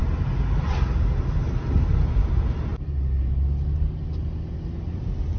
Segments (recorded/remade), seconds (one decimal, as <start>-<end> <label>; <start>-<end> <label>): 0.0-5.4 recorded